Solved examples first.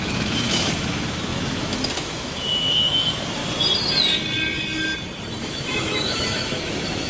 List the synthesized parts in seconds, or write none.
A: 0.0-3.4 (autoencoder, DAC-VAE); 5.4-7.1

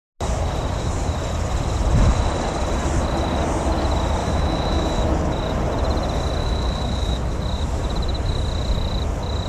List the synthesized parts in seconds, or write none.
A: 4.2-5.1 (autoencoder, DAC-VAE); 6.4-7.4

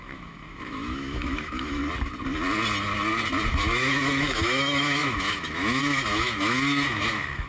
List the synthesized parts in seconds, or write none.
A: 0.0-1.8 (autoencoder, DAC-VAE); 3.5-7.5